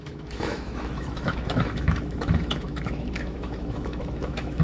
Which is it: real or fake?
fake